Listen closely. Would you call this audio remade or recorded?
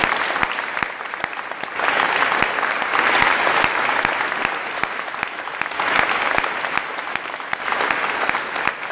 recorded